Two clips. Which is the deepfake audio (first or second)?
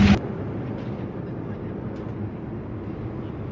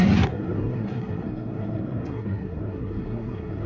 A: second